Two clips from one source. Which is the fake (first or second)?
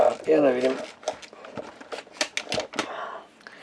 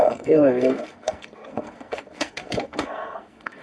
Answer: second